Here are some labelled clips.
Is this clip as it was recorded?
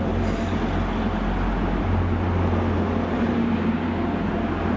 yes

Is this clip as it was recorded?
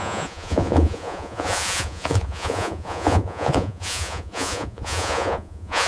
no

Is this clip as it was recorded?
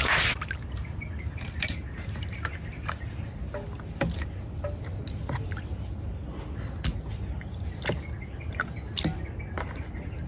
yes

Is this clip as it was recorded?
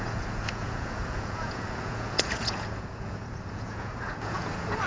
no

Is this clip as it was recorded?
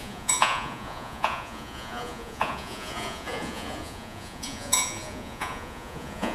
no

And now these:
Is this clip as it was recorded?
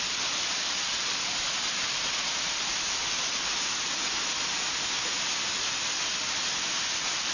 yes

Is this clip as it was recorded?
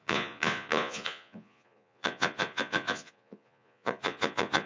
no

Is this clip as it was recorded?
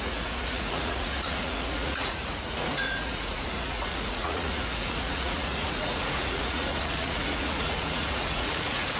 no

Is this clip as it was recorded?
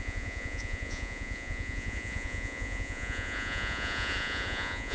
no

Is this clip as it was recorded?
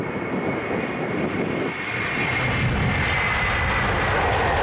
yes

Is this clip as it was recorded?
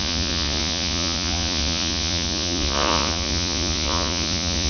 no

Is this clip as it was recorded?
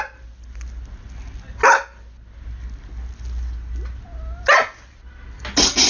yes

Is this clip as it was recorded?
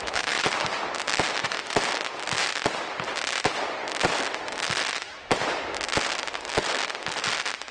yes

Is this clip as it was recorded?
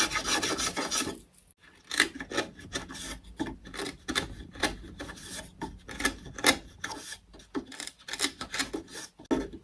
yes